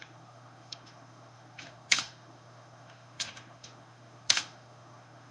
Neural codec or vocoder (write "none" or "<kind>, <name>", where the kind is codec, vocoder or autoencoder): autoencoder, DAC-VAE